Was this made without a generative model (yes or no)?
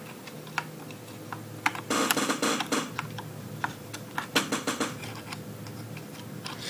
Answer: yes